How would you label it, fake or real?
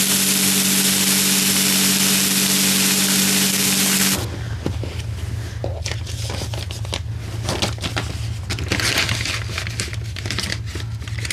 real